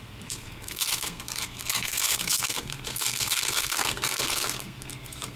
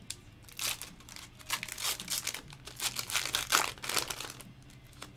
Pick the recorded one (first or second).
second